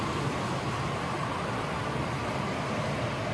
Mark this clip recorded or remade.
recorded